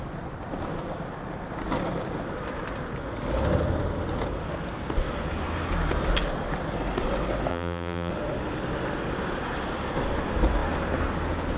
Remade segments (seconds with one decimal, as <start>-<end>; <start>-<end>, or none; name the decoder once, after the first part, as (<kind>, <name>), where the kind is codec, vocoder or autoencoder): 7.5-8.1 (vocoder, BigVGAN v2)